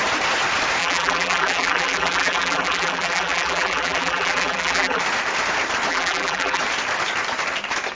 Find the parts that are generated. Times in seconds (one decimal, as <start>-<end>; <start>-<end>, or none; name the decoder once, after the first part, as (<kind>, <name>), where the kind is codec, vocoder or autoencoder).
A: 0.8-5.0 (vocoder, BigVGAN v2); 5.9-6.6